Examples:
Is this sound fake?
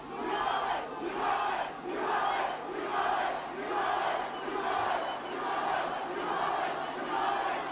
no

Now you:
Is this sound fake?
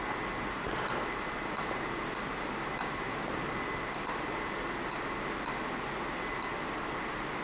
no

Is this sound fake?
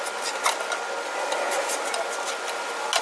no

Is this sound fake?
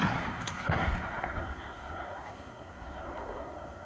yes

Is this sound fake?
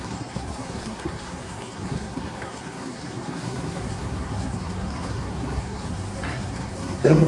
yes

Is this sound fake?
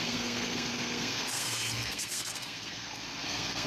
yes